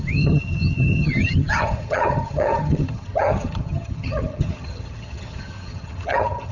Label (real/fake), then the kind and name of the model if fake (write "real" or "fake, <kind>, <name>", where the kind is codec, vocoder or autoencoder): fake, vocoder, HiFi-GAN